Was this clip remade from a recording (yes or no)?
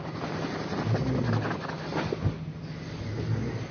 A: no